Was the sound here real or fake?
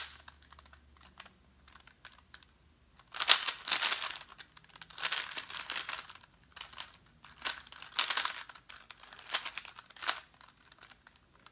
real